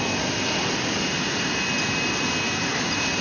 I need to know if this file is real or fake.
real